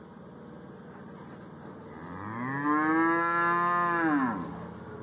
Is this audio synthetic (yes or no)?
no